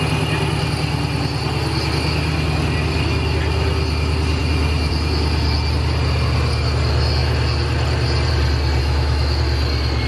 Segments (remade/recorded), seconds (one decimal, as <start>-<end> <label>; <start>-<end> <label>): 0.0-8.8 recorded; 8.8-9.4 remade; 9.4-10.1 recorded